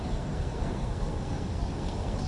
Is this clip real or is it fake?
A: fake